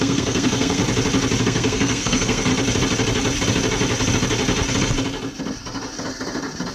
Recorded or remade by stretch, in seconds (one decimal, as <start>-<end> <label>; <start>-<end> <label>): 0.0-0.8 remade; 0.8-1.4 recorded; 1.4-2.5 remade; 2.5-6.7 recorded